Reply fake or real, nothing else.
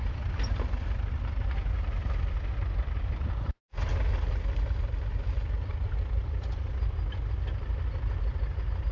real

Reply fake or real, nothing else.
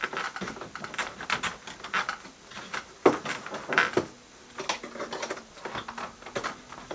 real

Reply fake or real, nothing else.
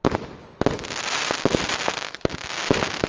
real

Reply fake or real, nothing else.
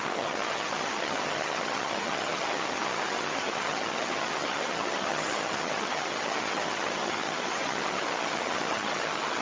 fake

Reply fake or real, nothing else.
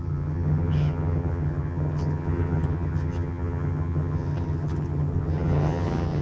fake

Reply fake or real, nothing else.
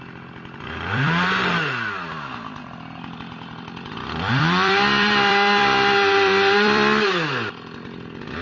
fake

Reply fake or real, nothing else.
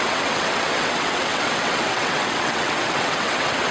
fake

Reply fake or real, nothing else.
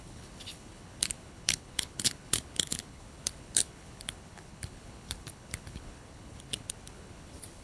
fake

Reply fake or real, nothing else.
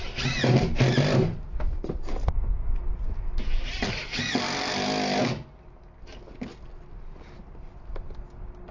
real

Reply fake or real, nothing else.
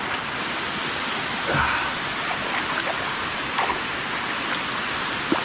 real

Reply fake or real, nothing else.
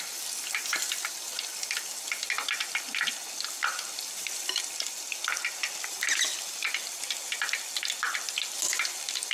real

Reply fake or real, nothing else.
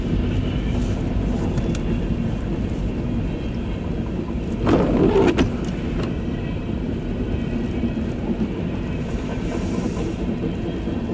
real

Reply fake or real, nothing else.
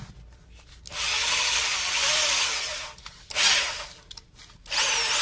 real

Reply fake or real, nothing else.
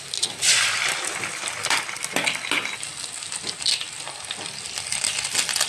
real